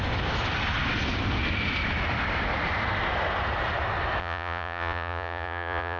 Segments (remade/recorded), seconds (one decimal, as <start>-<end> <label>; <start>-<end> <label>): 0.0-4.2 recorded; 4.2-6.0 remade

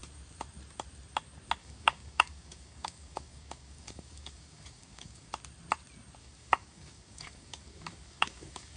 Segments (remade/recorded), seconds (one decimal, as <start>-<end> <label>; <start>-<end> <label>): 0.0-1.6 recorded; 1.6-5.3 remade; 5.3-6.2 recorded; 6.2-8.8 remade

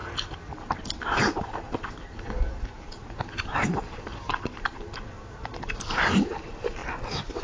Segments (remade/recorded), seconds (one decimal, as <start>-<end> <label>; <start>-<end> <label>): 0.0-7.4 recorded

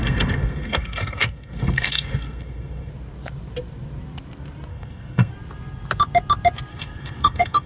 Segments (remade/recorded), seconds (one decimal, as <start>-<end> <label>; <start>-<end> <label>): 0.0-2.9 remade; 2.9-4.7 recorded; 4.7-5.3 remade; 5.3-6.7 recorded; 6.7-7.7 remade